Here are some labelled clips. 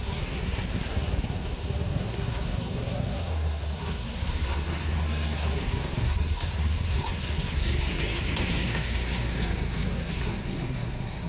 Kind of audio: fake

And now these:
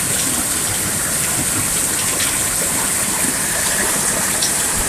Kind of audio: real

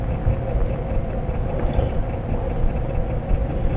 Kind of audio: real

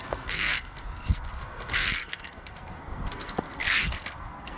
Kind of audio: fake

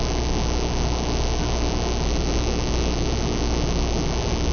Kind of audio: real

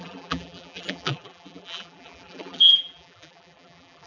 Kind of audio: fake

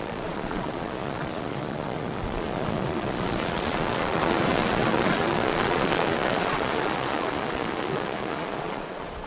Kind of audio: fake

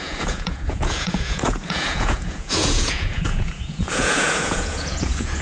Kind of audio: fake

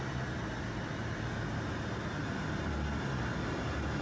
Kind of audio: real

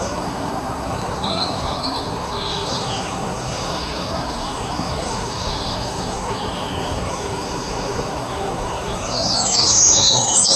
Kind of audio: fake